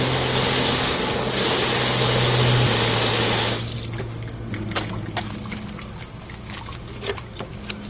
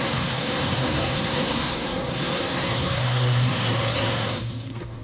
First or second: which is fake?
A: second